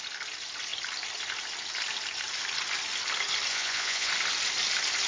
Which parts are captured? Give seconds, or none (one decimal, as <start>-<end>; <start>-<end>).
0.0-3.5; 4.1-5.1